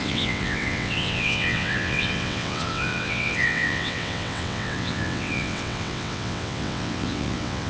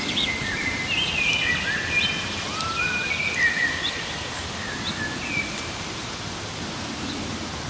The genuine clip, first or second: second